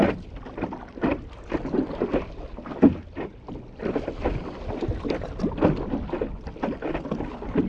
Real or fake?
real